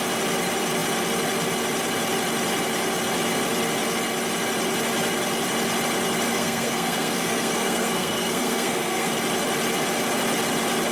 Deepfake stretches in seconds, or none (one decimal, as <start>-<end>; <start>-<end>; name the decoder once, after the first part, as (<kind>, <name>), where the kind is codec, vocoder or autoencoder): 6.3-9.1 (codec, SNAC)